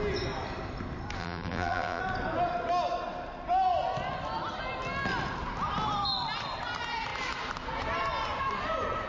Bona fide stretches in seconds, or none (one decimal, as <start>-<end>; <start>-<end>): 0.0-1.2; 2.0-9.1